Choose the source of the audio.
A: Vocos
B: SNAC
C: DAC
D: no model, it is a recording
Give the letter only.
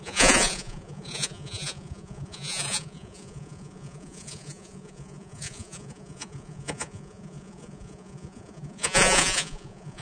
A